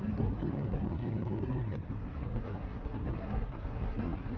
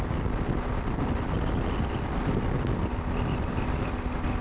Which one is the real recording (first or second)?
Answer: second